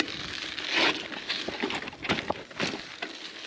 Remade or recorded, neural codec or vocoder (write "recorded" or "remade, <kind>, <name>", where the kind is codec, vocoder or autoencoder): recorded